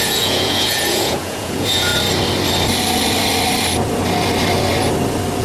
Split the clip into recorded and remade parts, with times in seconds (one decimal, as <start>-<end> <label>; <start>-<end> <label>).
0.0-1.9 remade; 1.9-5.4 recorded